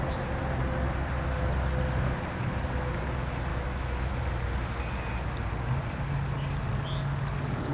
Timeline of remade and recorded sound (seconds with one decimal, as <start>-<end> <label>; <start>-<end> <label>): 0.0-3.5 recorded; 3.5-4.1 remade; 4.1-7.7 recorded